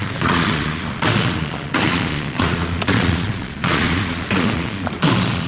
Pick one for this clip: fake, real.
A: fake